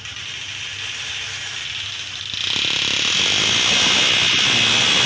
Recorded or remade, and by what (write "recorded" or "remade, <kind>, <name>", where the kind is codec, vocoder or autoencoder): recorded